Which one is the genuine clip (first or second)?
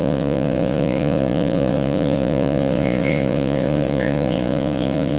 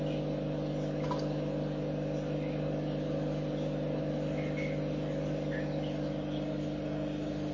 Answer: second